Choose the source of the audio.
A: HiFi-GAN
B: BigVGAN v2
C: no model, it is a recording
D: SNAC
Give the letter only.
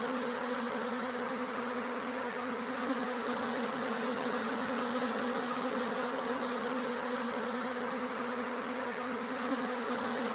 A